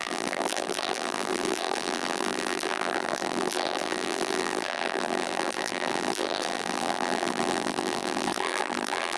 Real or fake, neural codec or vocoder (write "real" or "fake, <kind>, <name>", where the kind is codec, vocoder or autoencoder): fake, vocoder, BigVGAN v2